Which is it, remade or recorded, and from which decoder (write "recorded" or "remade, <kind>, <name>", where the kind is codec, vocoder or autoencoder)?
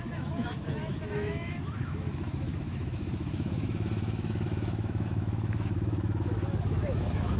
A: remade, autoencoder, DAC-VAE